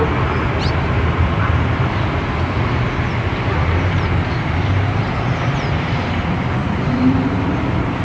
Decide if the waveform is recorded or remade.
recorded